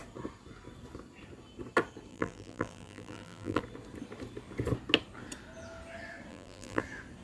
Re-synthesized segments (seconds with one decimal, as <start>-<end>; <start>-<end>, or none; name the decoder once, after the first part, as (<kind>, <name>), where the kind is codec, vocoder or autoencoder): 2.1-3.6 (vocoder, BigVGAN v2); 6.3-6.8

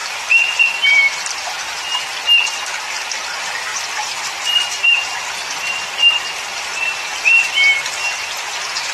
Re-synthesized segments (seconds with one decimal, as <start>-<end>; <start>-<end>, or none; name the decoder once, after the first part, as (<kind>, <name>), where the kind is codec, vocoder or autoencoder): 0.0-1.8 (vocoder, BigVGAN v2)

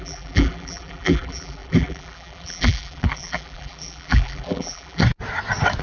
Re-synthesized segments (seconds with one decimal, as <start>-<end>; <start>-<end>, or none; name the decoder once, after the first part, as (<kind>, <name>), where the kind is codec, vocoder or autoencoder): 0.0-5.0 (vocoder, BigVGAN v2)

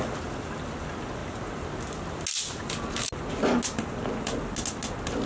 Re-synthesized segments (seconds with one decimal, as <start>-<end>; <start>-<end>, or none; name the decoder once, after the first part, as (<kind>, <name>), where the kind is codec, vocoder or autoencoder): none

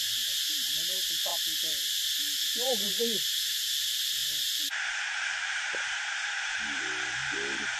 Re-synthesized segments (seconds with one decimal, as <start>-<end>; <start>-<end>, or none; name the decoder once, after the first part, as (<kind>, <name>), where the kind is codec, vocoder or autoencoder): 0.0-7.8 (vocoder, BigVGAN v2)